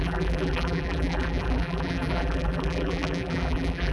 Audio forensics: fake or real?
fake